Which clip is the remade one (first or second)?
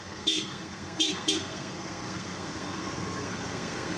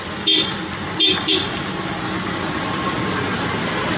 first